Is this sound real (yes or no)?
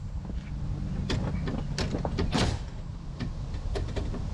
yes